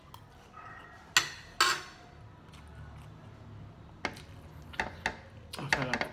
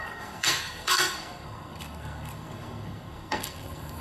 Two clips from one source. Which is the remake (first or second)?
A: second